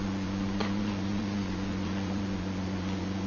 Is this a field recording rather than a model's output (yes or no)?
no